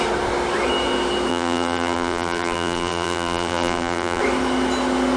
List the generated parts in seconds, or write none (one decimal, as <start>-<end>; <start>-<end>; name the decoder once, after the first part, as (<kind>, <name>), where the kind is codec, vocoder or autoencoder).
1.3-4.2 (vocoder, BigVGAN v2)